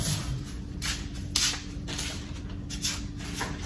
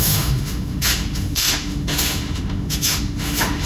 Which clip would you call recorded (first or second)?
first